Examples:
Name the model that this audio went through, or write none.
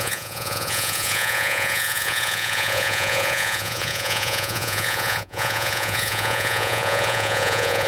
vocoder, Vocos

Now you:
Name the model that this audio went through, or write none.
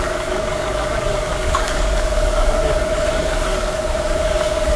codec, DAC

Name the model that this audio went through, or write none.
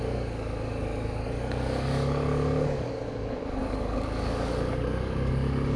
codec, DAC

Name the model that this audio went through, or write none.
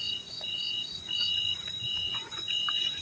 vocoder, Vocos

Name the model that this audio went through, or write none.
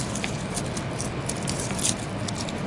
none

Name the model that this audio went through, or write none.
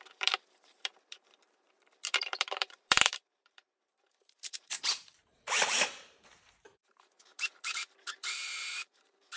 vocoder, BigVGAN v2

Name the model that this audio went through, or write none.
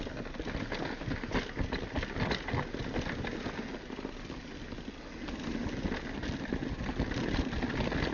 none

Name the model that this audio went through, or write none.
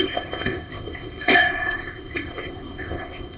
codec, ZipCodec